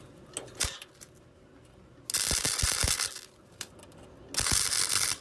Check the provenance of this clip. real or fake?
real